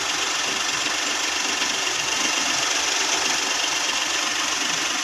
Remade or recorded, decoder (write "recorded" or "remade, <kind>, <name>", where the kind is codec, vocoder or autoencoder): recorded